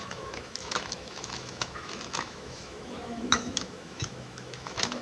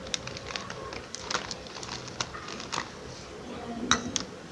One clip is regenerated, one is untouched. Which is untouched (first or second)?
second